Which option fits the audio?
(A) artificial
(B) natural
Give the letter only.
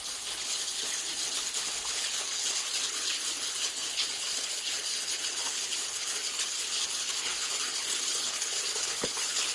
A